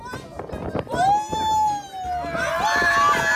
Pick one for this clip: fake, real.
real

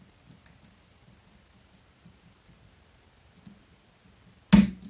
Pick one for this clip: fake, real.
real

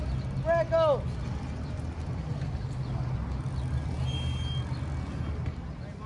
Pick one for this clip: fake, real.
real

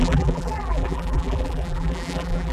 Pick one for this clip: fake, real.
fake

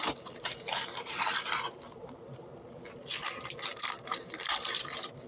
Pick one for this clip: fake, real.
fake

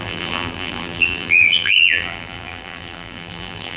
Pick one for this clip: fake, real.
fake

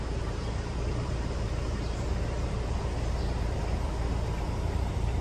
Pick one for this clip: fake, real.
fake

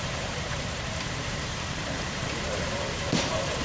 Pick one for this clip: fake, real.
fake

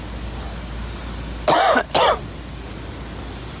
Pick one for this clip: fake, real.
real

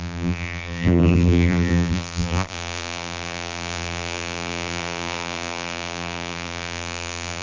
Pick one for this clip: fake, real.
fake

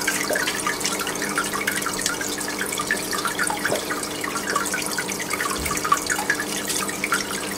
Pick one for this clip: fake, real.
fake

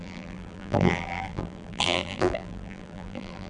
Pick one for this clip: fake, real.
fake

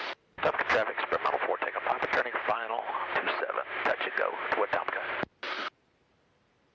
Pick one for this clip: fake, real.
fake